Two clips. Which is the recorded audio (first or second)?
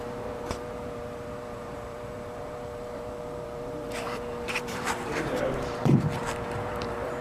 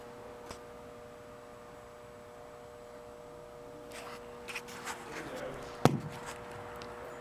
second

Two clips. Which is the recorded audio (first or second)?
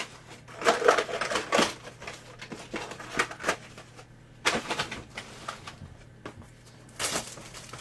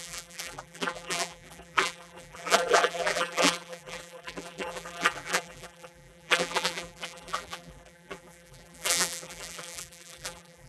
first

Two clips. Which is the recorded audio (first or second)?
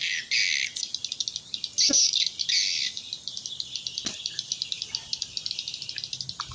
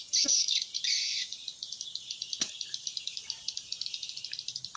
first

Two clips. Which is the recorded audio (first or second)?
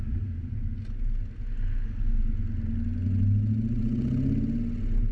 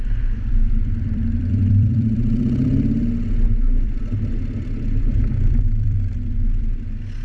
first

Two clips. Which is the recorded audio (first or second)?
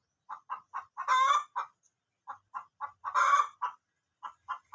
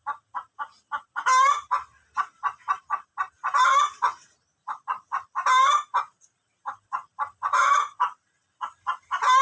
first